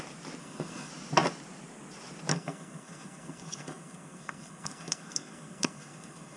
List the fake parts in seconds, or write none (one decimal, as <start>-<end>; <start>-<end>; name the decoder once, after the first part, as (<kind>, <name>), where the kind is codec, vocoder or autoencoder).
0.4-0.9 (codec, SNAC); 2.3-6.4